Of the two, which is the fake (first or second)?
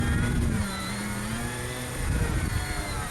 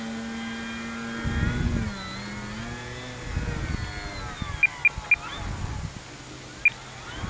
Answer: first